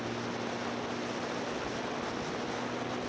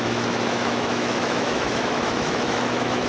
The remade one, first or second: second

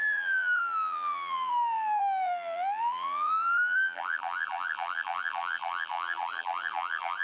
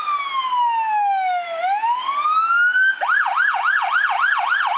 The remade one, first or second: first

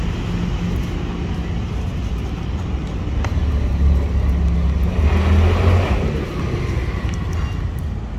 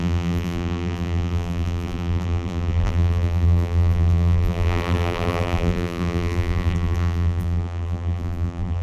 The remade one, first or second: second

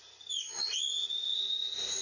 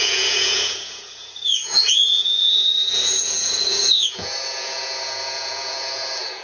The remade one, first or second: second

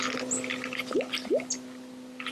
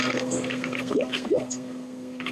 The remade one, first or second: second